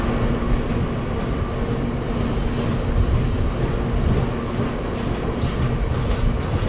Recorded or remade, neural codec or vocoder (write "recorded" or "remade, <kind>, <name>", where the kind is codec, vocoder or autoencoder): recorded